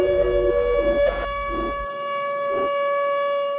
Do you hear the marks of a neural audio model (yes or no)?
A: no